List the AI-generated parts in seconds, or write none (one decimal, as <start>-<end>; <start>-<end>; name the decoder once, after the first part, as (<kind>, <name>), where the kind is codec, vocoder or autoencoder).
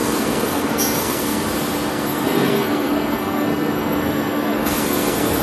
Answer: 0.0-1.4 (codec, SNAC); 1.9-5.4